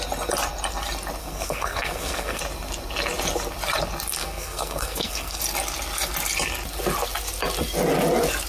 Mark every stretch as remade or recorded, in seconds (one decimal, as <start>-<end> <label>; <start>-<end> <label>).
0.0-1.2 recorded; 1.2-2.4 remade; 2.4-4.2 recorded; 4.2-5.4 remade; 5.4-8.5 recorded